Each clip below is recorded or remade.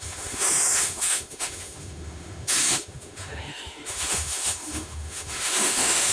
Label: remade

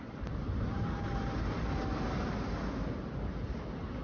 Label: recorded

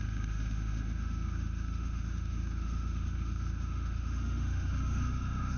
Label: remade